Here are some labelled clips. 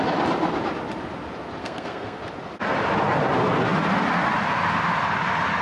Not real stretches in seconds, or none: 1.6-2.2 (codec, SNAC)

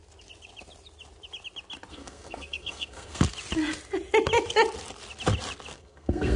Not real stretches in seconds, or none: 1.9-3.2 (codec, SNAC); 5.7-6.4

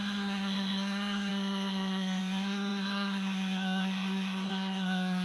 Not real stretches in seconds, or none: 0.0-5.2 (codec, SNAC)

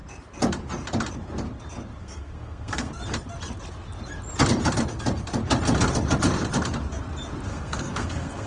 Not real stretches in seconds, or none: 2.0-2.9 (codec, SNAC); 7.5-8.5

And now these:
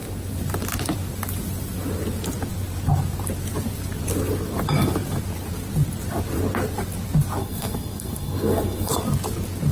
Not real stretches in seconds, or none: 7.4-8.9 (codec, SNAC)

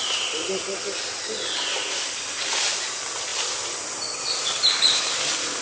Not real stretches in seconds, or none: none